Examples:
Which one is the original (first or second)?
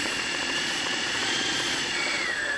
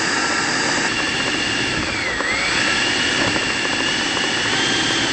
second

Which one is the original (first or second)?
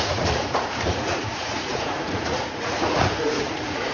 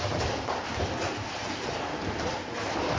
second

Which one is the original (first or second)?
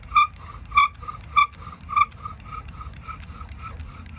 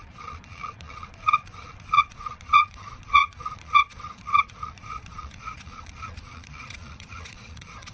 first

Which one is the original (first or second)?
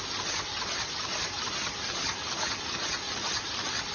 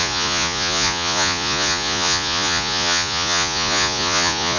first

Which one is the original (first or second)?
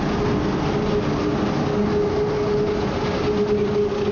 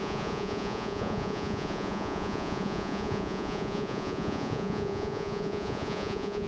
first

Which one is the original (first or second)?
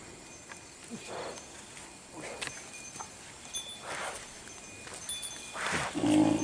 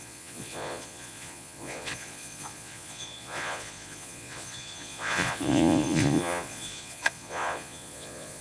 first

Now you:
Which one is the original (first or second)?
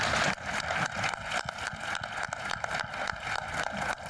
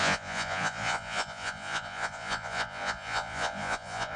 first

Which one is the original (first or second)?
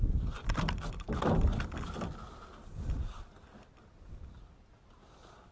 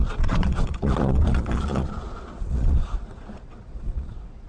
first